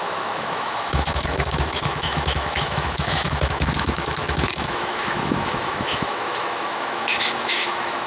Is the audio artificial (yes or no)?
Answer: yes